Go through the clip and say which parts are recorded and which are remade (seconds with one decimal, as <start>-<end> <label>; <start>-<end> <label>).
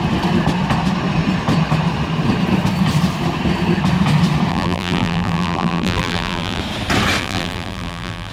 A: 0.0-4.5 recorded; 4.5-6.6 remade; 6.6-7.2 recorded; 7.2-8.3 remade